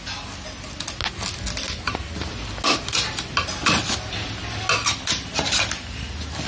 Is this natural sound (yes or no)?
yes